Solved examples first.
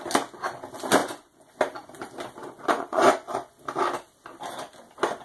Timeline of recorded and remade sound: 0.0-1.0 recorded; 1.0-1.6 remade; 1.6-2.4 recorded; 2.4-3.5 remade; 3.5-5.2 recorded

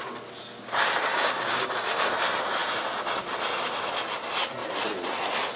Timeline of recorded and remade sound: 0.0-1.1 recorded; 1.1-2.1 remade; 2.1-5.6 recorded

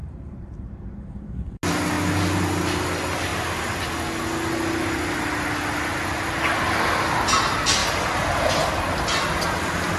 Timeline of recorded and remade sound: 0.0-0.7 remade; 0.7-10.0 recorded

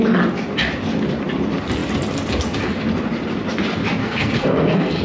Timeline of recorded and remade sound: 0.0-4.0 recorded; 4.0-5.0 remade

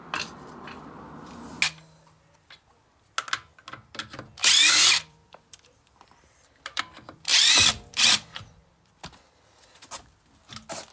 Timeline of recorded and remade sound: 0.0-4.4 recorded; 4.4-6.8 remade; 6.8-7.3 recorded; 7.3-9.3 remade; 9.3-10.9 recorded

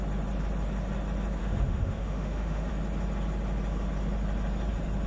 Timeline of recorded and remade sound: 0.0-1.4 recorded; 1.4-2.7 remade; 2.7-5.1 recorded

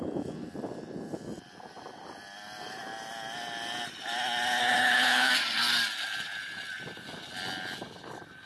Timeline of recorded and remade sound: 0.0-4.6 recorded; 4.6-5.3 remade; 5.3-8.5 recorded

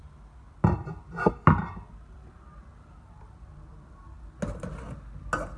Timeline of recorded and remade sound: 0.0-5.6 recorded